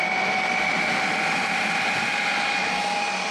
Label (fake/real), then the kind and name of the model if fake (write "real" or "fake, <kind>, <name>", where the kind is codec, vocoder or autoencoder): real